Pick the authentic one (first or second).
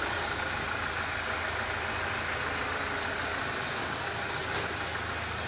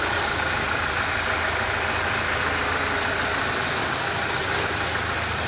first